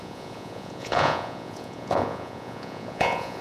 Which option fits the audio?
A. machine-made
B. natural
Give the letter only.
A